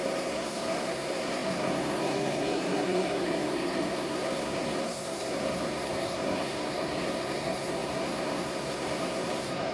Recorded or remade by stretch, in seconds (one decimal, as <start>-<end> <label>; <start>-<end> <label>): 0.0-9.7 remade

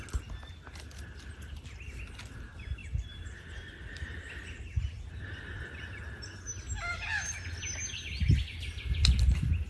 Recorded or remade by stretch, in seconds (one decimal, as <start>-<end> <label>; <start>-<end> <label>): 0.0-9.7 recorded

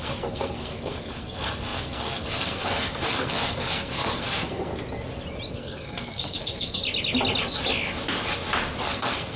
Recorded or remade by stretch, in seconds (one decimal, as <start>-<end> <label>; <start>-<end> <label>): 0.0-4.7 remade; 4.7-5.5 recorded; 5.5-6.8 remade; 6.8-8.8 recorded; 8.8-9.4 remade

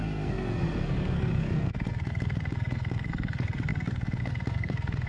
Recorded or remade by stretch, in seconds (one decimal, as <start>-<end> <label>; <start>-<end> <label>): 0.0-5.1 remade

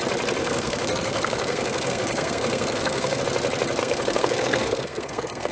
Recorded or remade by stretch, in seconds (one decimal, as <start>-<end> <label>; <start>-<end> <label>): 0.0-0.4 recorded; 0.4-3.2 remade; 3.2-3.8 recorded; 3.8-5.5 remade

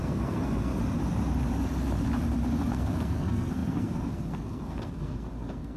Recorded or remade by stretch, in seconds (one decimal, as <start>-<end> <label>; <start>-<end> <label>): 0.0-0.7 remade; 0.7-2.7 recorded; 2.7-5.8 remade

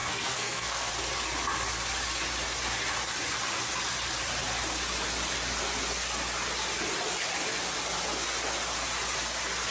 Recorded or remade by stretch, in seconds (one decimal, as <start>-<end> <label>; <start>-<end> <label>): 0.0-0.9 remade; 0.9-9.7 recorded